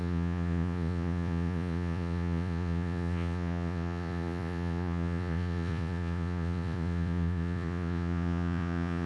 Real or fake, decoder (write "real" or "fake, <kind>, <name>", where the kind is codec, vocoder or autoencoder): fake, vocoder, Vocos